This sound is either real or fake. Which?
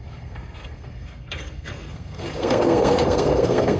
fake